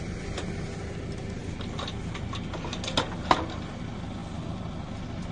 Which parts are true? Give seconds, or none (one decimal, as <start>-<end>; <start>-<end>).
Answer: 0.0-1.4; 1.9-5.3